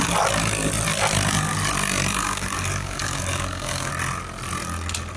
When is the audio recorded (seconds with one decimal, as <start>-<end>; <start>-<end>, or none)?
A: 0.0-2.2; 3.9-5.2